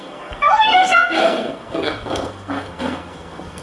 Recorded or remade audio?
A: remade